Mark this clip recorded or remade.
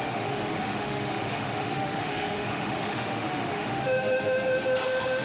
remade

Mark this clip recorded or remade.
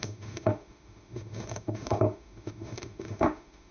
remade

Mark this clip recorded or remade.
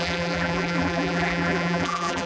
remade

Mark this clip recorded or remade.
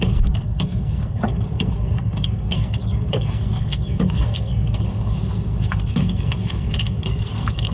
remade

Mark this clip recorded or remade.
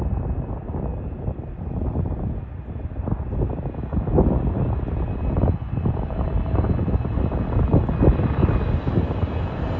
recorded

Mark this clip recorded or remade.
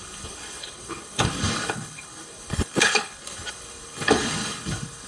remade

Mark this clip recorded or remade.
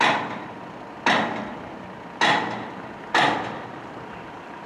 recorded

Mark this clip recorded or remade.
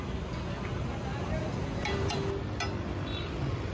recorded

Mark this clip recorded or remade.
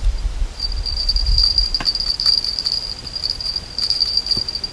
remade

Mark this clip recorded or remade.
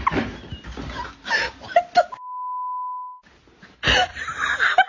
recorded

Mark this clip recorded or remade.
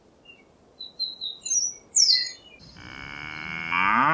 recorded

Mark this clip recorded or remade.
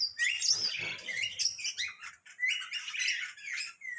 recorded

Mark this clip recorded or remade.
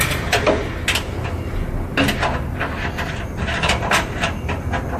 recorded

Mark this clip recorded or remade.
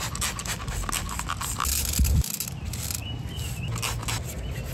recorded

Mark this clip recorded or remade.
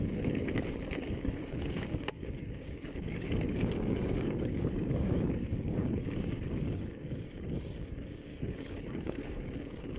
remade